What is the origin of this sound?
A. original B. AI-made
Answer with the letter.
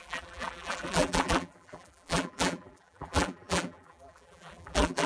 B